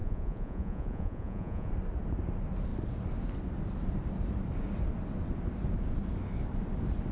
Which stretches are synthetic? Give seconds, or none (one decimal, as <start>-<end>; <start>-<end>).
0.0-1.7